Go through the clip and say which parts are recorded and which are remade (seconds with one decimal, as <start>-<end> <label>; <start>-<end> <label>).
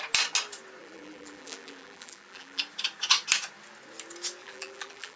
0.0-0.8 recorded; 0.8-2.6 remade; 2.6-4.4 recorded; 4.4-5.2 remade